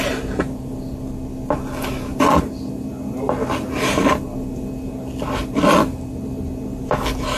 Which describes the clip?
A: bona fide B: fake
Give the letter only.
A